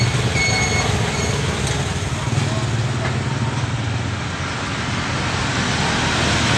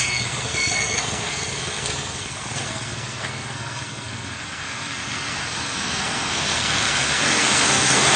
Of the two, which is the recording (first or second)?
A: first